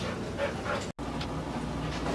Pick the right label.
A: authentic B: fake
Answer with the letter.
A